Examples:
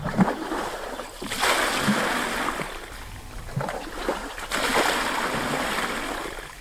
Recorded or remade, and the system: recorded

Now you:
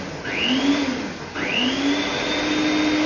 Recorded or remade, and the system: recorded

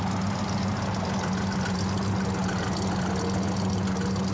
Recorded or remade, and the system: recorded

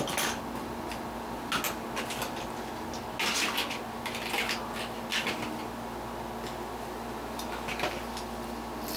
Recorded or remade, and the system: recorded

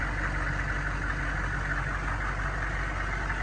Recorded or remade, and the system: recorded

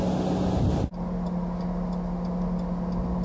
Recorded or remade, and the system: recorded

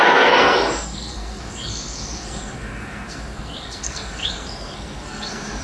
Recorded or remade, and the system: remade, codec, SNAC